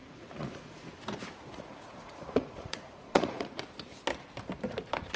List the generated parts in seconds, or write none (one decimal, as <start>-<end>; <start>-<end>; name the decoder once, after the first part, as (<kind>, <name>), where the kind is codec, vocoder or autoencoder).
0.0-0.9 (vocoder, Vocos); 1.5-3.5